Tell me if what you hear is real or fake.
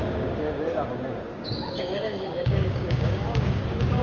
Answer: fake